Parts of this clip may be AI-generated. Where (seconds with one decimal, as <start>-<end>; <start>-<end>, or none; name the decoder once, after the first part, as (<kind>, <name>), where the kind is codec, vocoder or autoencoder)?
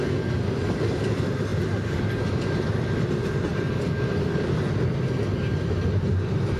none